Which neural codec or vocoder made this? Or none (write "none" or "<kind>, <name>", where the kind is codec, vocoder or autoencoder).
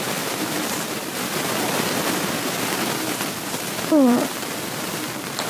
vocoder, BigVGAN v2